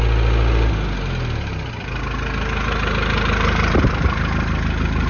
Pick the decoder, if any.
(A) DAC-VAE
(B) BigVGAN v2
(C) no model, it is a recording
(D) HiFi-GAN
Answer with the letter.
C